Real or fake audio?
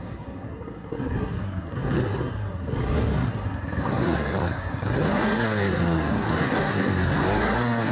fake